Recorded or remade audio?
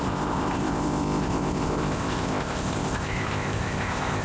remade